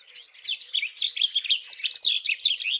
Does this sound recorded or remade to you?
recorded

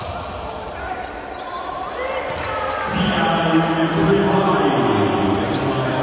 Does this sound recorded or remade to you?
recorded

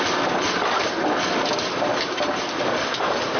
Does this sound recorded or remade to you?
recorded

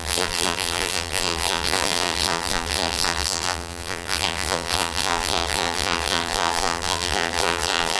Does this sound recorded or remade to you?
remade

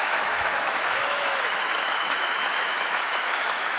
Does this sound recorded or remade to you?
remade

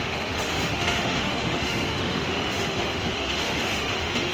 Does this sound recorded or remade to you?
remade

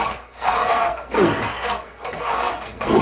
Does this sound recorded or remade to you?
remade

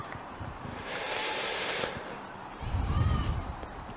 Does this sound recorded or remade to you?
remade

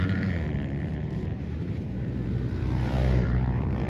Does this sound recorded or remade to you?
remade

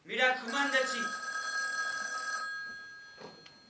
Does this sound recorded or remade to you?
recorded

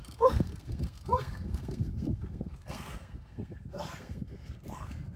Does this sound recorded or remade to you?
remade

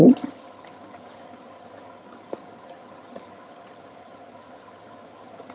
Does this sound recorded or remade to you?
remade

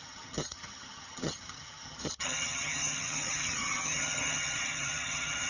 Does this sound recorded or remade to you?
remade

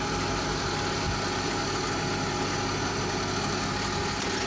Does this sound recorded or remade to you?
recorded